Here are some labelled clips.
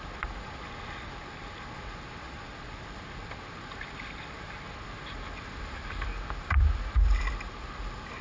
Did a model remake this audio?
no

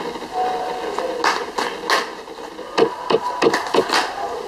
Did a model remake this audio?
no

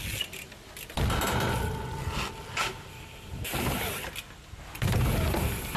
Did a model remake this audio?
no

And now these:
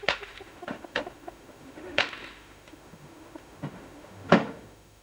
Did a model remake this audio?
yes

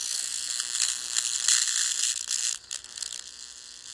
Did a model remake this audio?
no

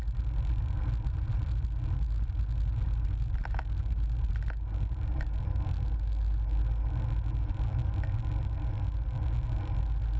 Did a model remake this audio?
no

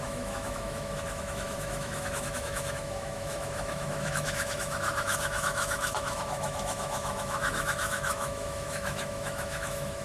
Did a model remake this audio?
yes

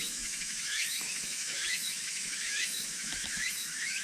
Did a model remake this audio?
yes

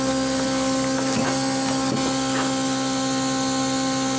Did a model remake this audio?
no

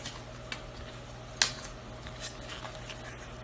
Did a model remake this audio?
no